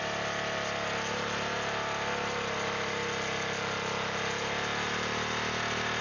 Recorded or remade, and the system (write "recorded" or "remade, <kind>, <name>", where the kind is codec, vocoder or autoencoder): recorded